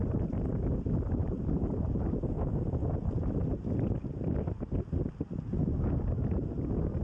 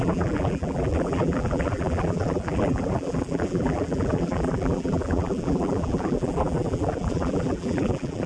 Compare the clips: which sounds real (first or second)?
first